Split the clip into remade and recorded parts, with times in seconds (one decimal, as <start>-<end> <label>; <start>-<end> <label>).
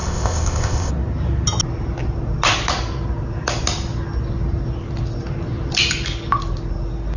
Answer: 0.0-0.9 remade; 0.9-7.2 recorded